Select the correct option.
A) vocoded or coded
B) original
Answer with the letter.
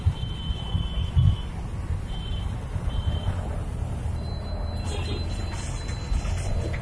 B